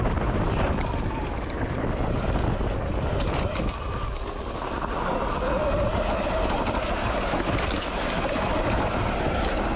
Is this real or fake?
real